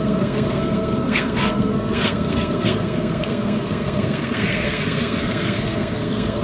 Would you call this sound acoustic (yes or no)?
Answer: no